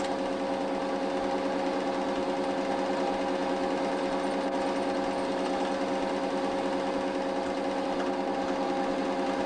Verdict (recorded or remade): recorded